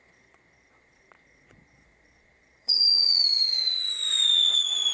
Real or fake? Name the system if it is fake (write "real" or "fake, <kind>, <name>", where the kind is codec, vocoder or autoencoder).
fake, vocoder, Vocos